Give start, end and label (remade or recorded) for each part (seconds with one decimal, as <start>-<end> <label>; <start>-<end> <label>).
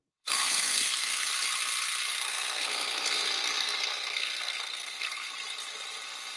0.0-1.3 remade; 1.3-2.1 recorded; 2.1-5.3 remade; 5.3-6.4 recorded